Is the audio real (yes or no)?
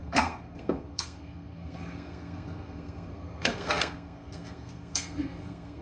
no